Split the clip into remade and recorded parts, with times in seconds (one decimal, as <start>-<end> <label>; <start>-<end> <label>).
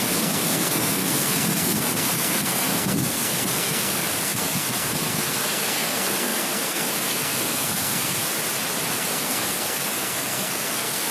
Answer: 0.0-8.2 remade; 8.2-8.9 recorded; 8.9-11.1 remade